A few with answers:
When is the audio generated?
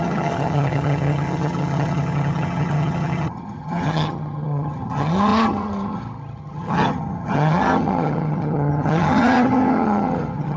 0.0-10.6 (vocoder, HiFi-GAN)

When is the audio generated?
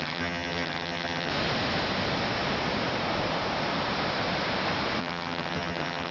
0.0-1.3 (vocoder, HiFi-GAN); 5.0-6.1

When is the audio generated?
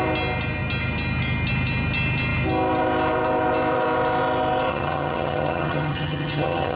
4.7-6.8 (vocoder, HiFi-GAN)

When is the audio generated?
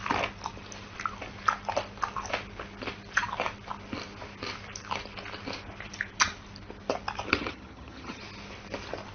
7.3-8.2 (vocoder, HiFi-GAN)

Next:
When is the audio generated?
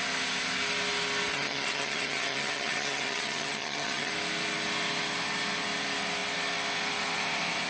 1.3-4.1 (vocoder, HiFi-GAN)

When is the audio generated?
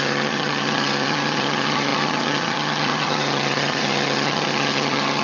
0.0-5.2 (vocoder, HiFi-GAN)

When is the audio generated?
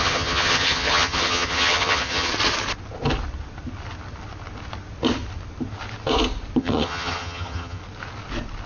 0.0-2.3 (vocoder, HiFi-GAN); 6.6-7.8